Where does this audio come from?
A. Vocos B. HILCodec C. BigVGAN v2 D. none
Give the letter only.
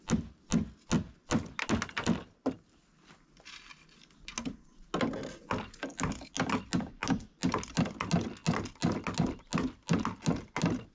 D